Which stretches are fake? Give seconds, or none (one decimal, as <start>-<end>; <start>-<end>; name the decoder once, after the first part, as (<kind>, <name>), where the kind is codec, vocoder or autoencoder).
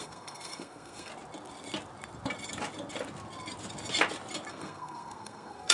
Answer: 0.0-1.1 (codec, SNAC); 4.5-5.7